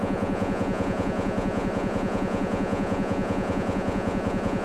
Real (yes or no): no